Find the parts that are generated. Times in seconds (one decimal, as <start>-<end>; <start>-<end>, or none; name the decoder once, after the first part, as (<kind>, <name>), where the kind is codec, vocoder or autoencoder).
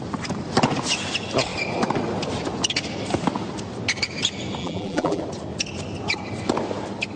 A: 4.6-5.2 (vocoder, BigVGAN v2)